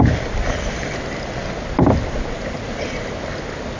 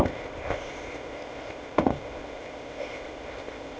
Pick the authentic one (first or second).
first